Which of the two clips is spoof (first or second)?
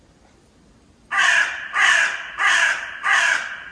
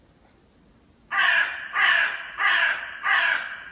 first